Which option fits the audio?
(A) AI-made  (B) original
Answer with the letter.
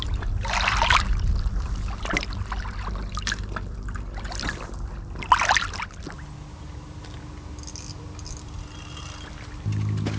B